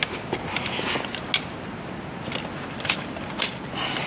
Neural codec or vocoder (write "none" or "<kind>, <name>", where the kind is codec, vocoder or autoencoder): none